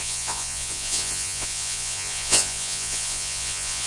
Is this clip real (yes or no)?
no